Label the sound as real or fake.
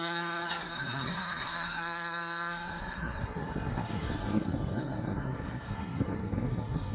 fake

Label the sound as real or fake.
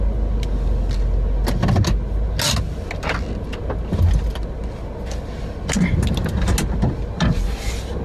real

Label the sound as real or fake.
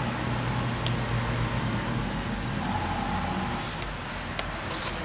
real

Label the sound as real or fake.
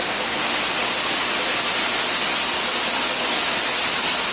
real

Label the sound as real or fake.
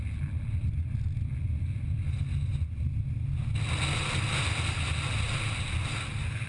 real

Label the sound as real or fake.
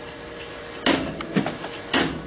real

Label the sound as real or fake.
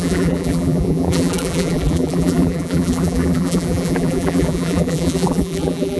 fake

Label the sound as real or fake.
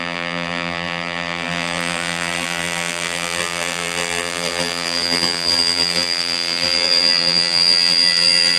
fake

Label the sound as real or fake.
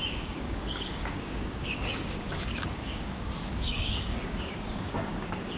fake